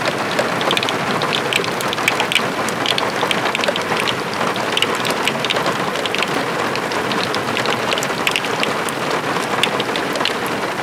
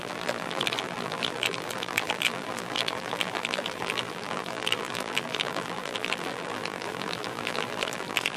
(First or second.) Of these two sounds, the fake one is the second